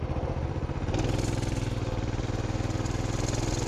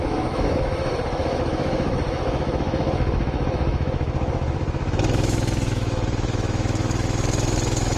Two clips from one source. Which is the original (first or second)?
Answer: first